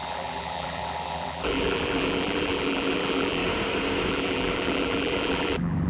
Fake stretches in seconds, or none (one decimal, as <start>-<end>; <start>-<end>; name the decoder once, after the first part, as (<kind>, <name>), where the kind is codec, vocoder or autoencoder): 0.0-3.4 (vocoder, BigVGAN v2); 4.1-5.9